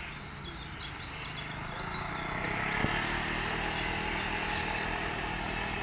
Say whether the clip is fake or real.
real